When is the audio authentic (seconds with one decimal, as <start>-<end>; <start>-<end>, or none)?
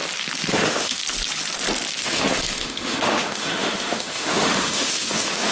0.0-0.5; 1.0-2.0